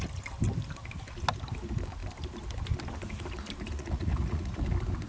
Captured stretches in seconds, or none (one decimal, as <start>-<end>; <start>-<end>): 0.0-3.7; 4.6-5.1